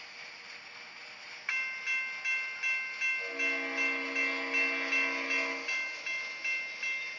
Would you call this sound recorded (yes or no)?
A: yes